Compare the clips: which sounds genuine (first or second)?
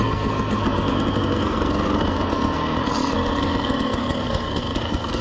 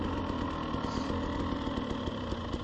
second